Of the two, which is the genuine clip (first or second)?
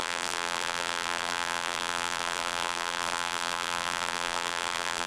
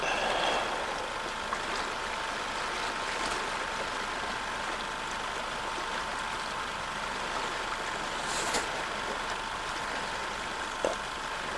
second